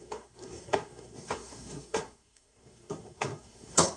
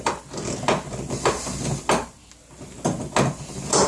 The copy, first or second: first